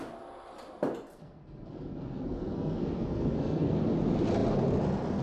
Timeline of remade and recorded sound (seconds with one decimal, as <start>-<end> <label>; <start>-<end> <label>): 0.0-1.1 recorded; 1.1-3.8 remade; 3.8-5.2 recorded